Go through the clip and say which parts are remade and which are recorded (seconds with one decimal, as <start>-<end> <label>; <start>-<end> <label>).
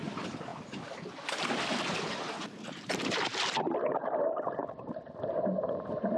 0.0-6.2 recorded